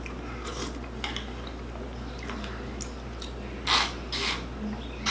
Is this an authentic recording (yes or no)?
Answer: yes